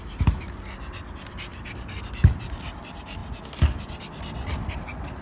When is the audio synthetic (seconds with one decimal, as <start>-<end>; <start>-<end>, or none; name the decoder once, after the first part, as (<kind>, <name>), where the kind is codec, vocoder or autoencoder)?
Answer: none